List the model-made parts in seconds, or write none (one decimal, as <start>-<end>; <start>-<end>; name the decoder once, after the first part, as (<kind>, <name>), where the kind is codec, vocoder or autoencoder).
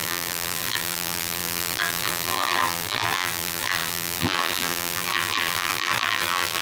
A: 0.0-6.6 (vocoder, BigVGAN v2)